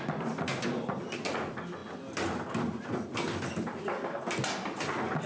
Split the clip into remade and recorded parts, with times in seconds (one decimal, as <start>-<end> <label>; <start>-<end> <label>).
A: 0.0-5.3 recorded

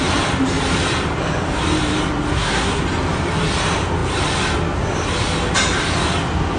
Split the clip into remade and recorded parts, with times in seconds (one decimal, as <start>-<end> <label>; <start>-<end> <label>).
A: 0.0-2.3 recorded; 2.3-2.8 remade; 2.8-6.6 recorded

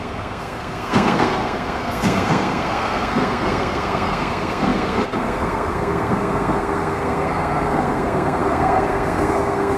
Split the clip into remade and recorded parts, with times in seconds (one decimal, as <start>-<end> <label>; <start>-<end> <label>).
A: 0.0-9.8 remade

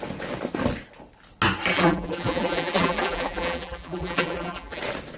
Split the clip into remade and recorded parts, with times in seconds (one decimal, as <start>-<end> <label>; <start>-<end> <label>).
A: 0.0-1.7 recorded; 1.7-4.8 remade; 4.8-5.2 recorded